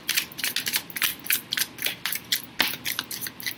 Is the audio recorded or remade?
recorded